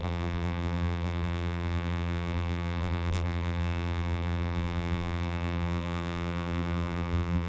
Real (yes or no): no